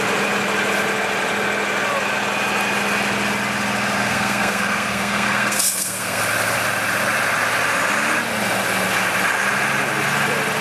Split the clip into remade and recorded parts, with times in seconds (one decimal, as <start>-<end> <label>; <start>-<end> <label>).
0.0-4.0 recorded; 4.0-6.2 remade; 6.2-10.6 recorded